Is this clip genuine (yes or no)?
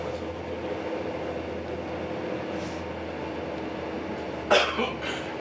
yes